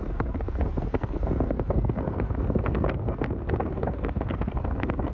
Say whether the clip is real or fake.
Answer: fake